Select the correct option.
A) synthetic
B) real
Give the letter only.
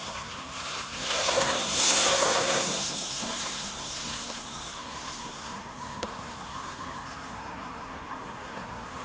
A